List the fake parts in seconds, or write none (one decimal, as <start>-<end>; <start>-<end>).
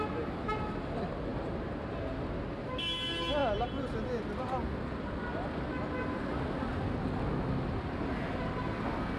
none